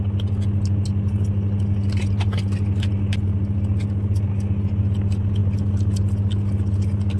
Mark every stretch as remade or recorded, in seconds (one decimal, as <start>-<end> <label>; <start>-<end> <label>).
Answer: 0.0-7.2 recorded